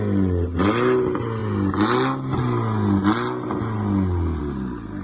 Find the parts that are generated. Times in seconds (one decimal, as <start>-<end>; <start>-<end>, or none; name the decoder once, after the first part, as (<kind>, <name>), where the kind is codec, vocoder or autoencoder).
none